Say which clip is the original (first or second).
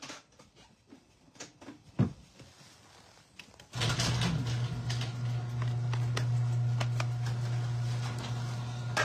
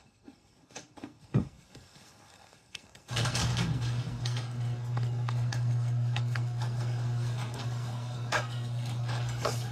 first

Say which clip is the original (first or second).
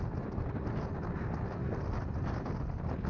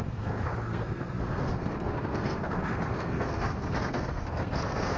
first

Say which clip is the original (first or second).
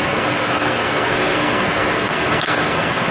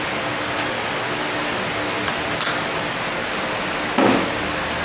second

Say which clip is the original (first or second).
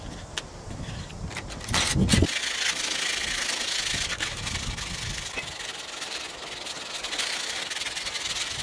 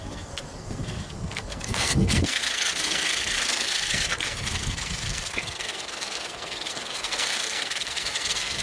first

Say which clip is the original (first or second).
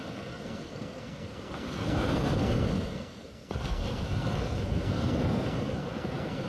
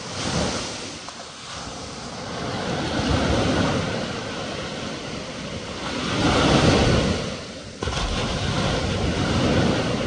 second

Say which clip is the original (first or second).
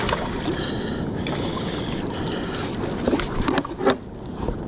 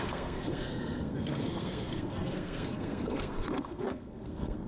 first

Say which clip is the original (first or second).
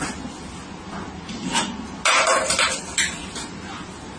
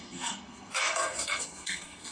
first